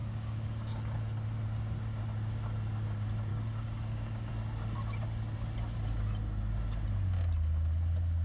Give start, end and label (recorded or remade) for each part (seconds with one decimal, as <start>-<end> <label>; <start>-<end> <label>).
0.0-0.8 remade; 0.8-3.3 recorded; 3.3-4.3 remade; 4.3-8.2 recorded